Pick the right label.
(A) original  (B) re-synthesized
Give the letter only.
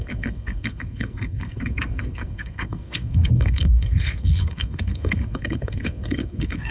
B